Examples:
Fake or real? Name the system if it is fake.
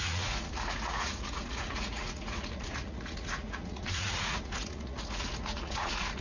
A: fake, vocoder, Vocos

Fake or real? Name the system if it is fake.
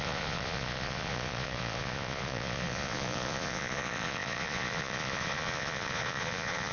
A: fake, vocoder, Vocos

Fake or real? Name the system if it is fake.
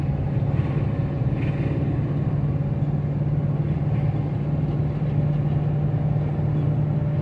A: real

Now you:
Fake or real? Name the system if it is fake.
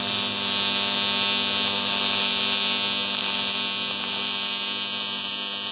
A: real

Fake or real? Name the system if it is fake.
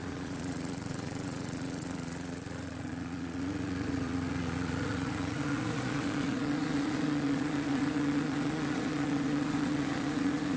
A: fake, vocoder, Vocos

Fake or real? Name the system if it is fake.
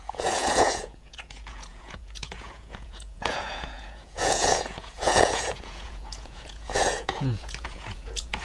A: fake, vocoder, Vocos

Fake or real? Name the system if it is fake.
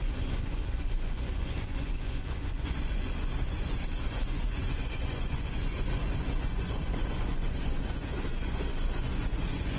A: fake, vocoder, Vocos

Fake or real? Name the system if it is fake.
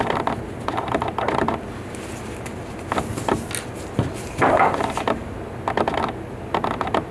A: real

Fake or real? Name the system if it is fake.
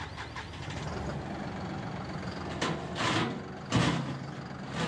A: real